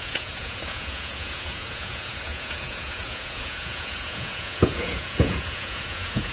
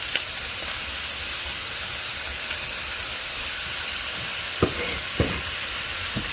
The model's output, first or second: first